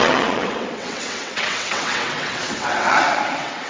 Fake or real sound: fake